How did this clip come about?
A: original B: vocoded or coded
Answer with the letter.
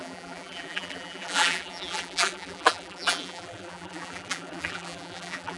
B